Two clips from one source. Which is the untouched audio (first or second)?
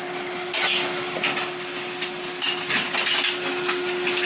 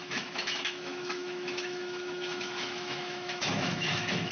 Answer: first